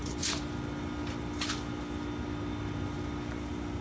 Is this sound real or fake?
real